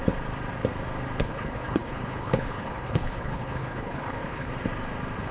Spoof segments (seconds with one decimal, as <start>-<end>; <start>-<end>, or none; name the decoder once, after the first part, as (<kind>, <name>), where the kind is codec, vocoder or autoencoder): 1.2-4.5 (codec, HILCodec)